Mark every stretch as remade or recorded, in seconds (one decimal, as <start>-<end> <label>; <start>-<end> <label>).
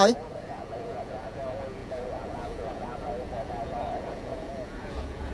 0.0-5.3 remade